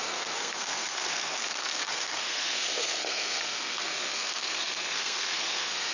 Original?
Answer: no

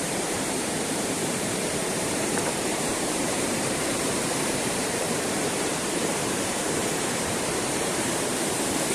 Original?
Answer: no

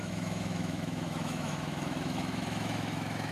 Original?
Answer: no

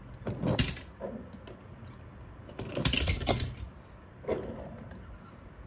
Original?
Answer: yes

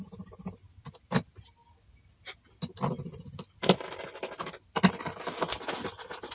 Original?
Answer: yes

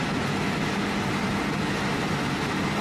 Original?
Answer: yes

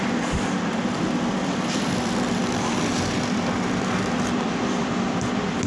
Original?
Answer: no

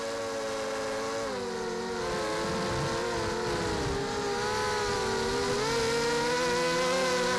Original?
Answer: yes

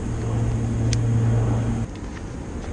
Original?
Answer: yes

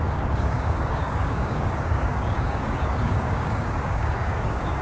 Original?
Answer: no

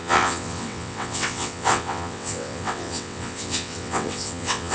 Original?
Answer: no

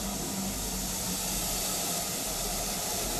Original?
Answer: yes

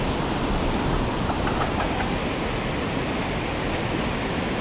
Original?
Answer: yes